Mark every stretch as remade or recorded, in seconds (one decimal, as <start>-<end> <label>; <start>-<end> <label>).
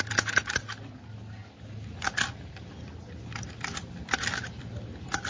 0.0-5.3 recorded